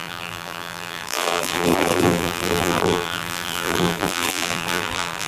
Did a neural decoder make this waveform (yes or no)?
yes